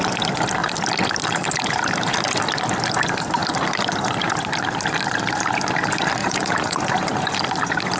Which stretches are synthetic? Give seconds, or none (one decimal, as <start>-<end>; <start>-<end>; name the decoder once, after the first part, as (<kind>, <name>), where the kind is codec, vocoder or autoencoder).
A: 6.2-6.8 (vocoder, Vocos)